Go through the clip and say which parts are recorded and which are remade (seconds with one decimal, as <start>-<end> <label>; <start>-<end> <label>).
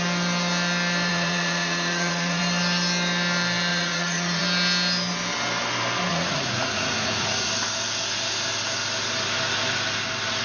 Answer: 0.0-1.1 recorded; 1.1-2.4 remade; 2.4-3.7 recorded; 3.7-4.4 remade; 4.4-6.1 recorded; 6.1-7.5 remade; 7.5-10.4 recorded